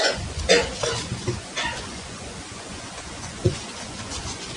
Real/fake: fake